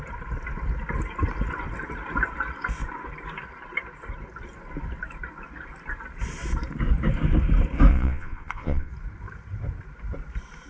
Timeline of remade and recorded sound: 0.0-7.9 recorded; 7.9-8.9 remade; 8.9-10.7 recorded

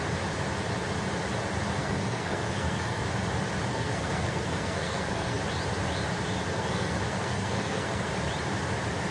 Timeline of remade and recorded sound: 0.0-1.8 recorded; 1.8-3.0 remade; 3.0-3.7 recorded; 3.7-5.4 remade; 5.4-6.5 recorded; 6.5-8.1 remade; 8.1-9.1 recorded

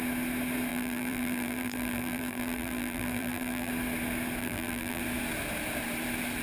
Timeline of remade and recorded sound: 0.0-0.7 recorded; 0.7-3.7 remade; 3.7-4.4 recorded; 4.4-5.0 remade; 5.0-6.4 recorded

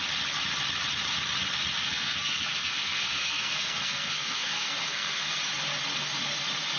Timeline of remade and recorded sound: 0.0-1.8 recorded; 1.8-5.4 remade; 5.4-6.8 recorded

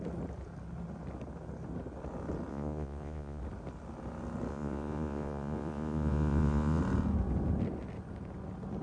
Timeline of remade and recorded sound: 0.0-2.5 recorded; 2.5-3.4 remade; 3.4-4.5 recorded; 4.5-6.8 remade; 6.8-8.8 recorded